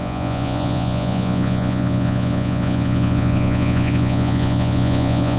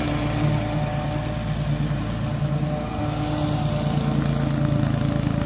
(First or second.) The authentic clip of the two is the second